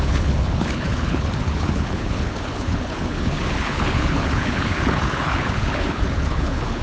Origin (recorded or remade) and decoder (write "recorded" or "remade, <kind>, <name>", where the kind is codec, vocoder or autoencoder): remade, codec, HILCodec